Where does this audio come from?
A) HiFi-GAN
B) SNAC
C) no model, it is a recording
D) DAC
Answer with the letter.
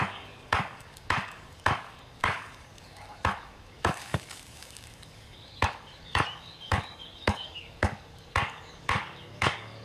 D